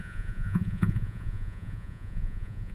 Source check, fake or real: fake